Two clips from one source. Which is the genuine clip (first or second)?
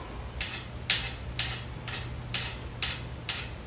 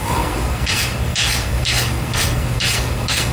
first